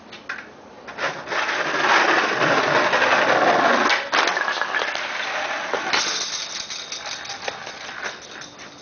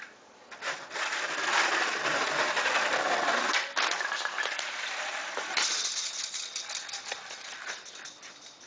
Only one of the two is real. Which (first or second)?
first